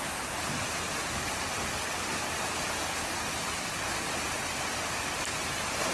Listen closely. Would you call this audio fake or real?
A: real